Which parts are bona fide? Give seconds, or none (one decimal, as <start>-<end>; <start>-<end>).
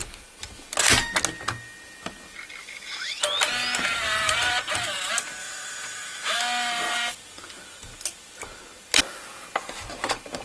0.0-2.6; 3.2-5.4; 6.4-10.4